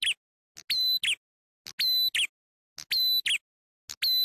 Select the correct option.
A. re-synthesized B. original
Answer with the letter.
B